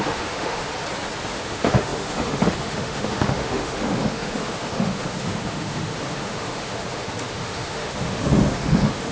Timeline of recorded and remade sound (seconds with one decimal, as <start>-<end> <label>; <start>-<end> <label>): 0.0-0.7 remade; 0.7-1.3 recorded; 1.3-9.1 remade

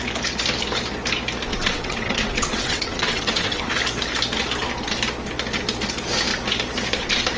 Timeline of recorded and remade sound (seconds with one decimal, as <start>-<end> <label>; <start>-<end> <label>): 0.0-1.5 recorded; 1.5-3.7 remade; 3.7-7.4 recorded

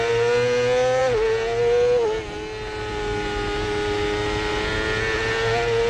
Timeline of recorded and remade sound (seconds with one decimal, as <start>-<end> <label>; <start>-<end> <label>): 0.0-5.9 recorded

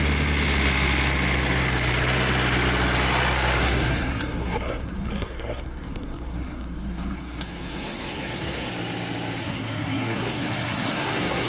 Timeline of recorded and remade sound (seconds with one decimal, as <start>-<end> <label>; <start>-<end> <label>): 0.0-3.6 recorded; 3.6-8.7 remade; 8.7-9.4 recorded; 9.4-11.5 remade

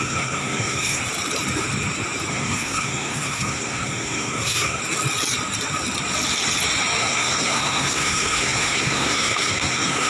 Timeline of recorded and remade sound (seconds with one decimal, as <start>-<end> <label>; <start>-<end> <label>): 0.0-1.0 remade; 1.0-2.3 recorded; 2.3-4.8 remade; 4.8-7.0 recorded; 7.0-10.1 remade